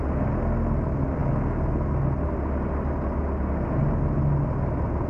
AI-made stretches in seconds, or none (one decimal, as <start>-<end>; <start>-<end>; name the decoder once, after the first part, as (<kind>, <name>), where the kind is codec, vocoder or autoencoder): none